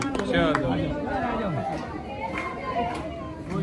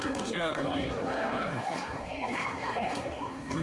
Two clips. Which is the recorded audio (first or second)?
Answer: first